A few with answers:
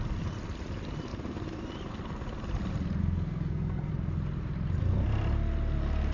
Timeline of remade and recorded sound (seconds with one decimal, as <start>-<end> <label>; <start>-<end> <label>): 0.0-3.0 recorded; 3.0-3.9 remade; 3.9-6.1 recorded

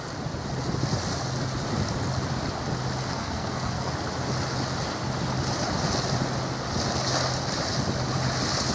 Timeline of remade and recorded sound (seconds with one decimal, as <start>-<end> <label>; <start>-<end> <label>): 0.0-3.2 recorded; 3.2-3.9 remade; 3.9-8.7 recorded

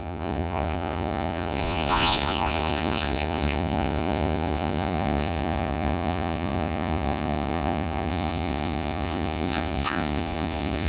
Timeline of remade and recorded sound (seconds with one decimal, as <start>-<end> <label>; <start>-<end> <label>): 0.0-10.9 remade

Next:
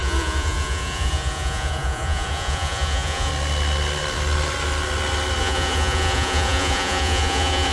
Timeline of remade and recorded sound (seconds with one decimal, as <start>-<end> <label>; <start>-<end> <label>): 0.0-3.3 remade; 3.3-5.4 recorded; 5.4-7.7 remade

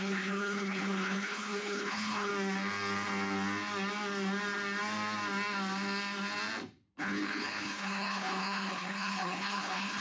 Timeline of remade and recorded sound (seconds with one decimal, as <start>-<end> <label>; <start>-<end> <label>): 0.0-2.3 remade; 2.3-7.0 recorded; 7.0-10.0 remade